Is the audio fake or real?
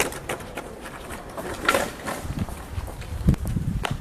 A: fake